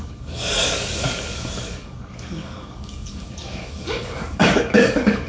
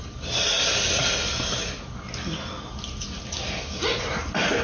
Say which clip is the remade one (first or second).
first